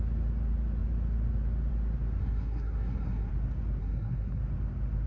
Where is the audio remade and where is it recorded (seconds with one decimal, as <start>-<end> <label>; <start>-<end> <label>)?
0.0-2.2 recorded; 2.2-3.3 remade; 3.3-3.8 recorded; 3.8-4.4 remade; 4.4-5.1 recorded